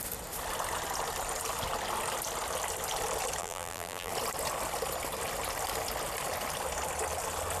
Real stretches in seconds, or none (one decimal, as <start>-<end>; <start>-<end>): 0.0-3.4; 4.1-7.6